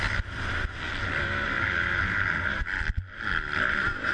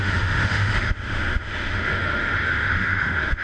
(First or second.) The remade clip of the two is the second